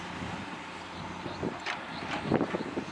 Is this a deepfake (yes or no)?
no